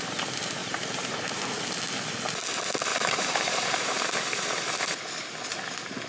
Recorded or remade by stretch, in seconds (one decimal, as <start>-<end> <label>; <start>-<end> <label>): 0.0-0.6 recorded; 0.6-1.4 remade; 1.4-2.9 recorded; 2.9-3.8 remade; 3.8-6.1 recorded